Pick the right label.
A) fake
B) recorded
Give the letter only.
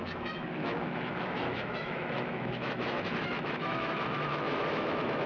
A